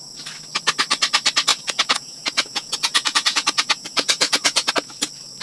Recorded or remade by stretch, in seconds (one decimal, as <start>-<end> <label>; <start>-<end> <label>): 0.0-1.5 recorded; 1.5-4.7 remade; 4.7-5.4 recorded